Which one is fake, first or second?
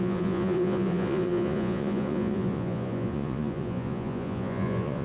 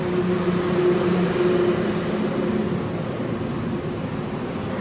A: first